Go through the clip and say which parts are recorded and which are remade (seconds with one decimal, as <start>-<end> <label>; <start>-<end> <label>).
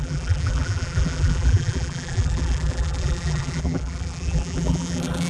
0.0-5.3 remade